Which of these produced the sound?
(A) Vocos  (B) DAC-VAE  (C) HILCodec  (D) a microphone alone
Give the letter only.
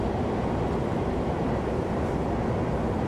D